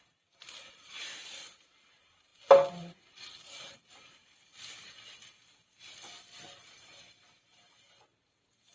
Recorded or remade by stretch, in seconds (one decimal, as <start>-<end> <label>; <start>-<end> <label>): 0.0-8.7 recorded

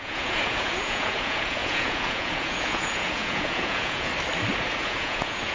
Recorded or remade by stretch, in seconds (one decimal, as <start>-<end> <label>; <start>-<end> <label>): 0.0-4.1 remade; 4.1-4.8 recorded; 4.8-5.5 remade